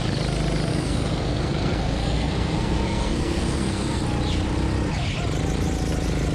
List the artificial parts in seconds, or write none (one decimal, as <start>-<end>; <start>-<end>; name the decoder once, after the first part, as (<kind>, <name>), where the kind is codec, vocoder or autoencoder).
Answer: 0.7-4.0 (codec, SNAC)